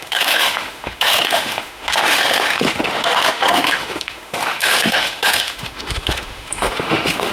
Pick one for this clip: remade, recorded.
remade